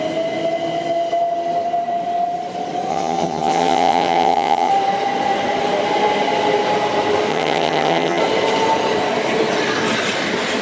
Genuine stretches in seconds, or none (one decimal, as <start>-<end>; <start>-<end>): 0.0-2.9; 4.7-7.3; 8.2-10.6